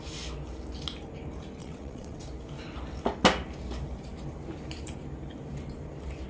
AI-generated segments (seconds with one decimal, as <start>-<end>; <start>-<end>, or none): 1.6-2.2